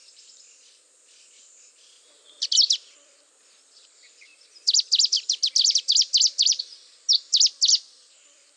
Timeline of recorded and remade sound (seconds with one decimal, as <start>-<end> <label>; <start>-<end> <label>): 0.0-8.6 recorded